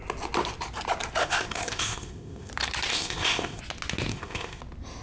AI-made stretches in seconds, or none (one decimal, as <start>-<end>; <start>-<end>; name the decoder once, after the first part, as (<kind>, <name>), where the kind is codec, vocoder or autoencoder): 1.2-2.5 (codec, ZipCodec); 2.9-3.6; 4.1-4.6